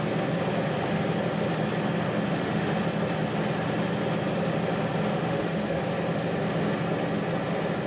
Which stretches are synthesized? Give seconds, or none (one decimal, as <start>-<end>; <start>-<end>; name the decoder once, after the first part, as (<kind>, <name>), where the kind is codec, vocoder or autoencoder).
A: 2.3-2.8 (autoencoder, DAC-VAE); 5.1-5.8